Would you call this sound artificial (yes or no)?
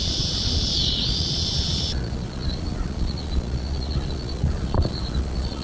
yes